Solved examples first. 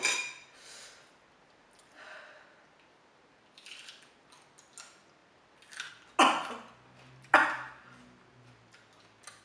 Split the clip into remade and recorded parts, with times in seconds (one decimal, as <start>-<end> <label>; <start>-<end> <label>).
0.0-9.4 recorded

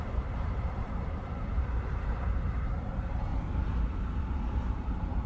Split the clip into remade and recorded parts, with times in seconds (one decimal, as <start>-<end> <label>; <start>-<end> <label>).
0.0-3.3 remade; 3.3-4.2 recorded; 4.2-5.3 remade

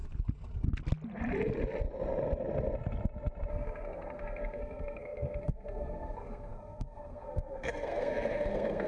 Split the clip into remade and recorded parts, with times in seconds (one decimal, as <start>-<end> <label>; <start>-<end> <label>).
0.0-3.5 recorded; 3.5-8.9 remade